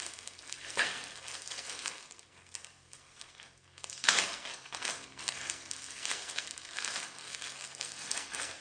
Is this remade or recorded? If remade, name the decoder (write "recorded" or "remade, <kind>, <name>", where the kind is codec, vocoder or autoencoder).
remade, codec, SNAC